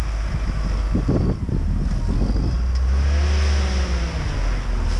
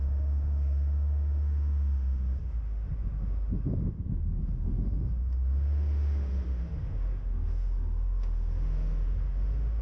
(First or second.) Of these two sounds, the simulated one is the second